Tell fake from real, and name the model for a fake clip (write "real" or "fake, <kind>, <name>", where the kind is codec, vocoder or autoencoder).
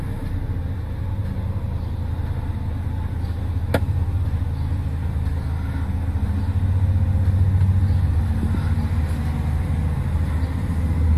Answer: real